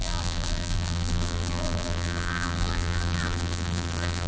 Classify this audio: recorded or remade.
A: remade